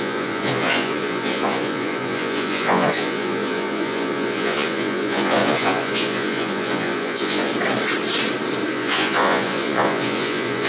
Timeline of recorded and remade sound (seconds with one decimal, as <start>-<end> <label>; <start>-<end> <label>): 0.0-7.5 remade; 7.5-8.7 recorded; 8.7-10.7 remade